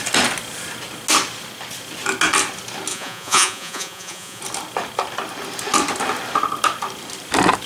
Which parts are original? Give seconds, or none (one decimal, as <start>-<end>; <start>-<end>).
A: 0.0-2.9; 4.4-7.7